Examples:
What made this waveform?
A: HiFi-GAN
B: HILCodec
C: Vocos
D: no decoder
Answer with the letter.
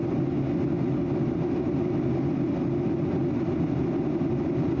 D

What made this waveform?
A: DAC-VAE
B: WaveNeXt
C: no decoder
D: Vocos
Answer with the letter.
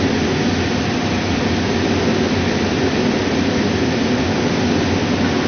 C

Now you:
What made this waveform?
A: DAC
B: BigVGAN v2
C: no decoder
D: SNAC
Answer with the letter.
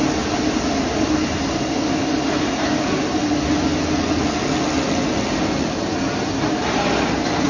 C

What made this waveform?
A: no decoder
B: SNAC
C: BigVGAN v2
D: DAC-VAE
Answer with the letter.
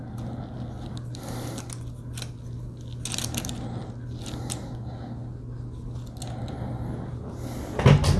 A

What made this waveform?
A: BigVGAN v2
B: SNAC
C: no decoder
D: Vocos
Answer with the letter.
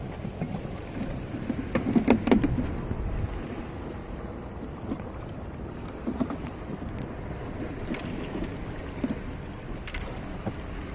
C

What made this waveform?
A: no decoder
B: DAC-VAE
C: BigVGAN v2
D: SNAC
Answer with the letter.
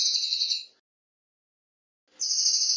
A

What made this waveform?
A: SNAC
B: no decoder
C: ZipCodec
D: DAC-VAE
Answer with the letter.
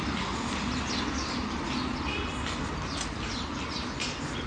B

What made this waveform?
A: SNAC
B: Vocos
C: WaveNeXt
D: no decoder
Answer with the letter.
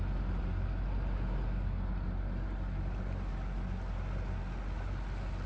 D